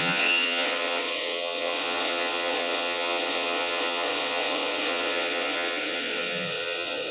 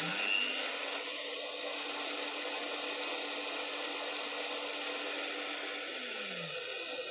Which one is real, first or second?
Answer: second